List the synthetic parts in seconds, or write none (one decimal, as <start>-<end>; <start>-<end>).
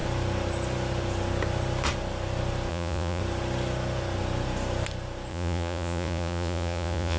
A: 2.7-3.2; 5.3-7.2